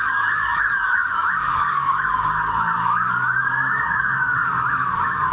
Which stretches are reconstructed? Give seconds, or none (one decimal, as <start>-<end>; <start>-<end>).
0.0-5.3